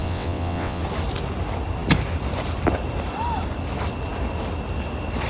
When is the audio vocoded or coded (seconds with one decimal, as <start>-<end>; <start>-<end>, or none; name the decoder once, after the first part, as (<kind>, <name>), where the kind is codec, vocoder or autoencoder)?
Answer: 0.0-0.8 (vocoder, WaveNeXt)